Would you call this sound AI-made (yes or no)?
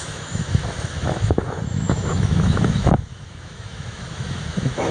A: yes